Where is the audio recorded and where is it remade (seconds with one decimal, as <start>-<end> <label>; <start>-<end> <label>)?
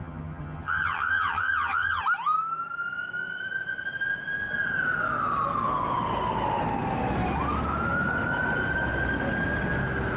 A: 0.0-2.0 remade; 2.0-10.2 recorded